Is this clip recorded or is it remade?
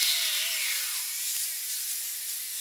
recorded